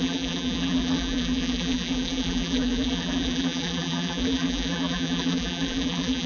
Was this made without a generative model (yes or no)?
no